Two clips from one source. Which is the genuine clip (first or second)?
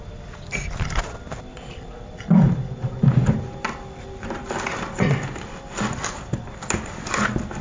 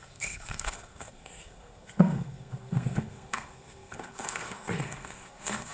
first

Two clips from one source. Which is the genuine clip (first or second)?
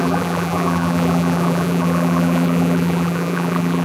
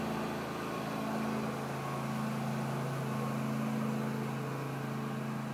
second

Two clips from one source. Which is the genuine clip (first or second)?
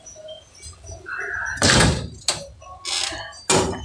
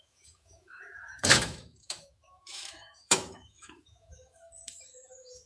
first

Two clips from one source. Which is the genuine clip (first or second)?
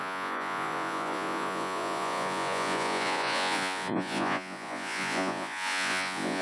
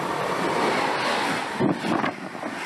second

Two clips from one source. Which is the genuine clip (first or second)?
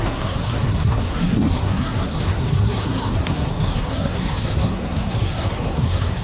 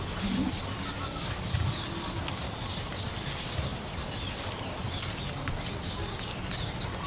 second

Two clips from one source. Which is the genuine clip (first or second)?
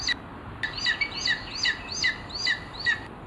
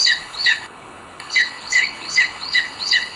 first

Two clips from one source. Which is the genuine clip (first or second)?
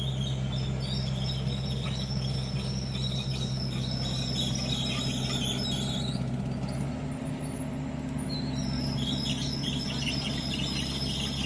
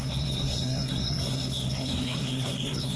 first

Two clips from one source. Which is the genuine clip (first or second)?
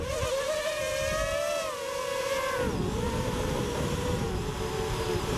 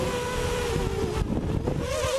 second